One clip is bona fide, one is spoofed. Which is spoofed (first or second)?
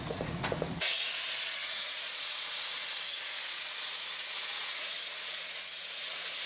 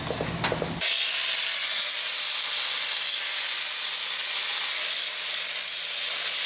first